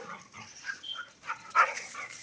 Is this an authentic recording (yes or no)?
yes